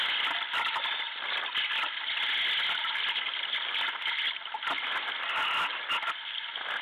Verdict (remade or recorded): recorded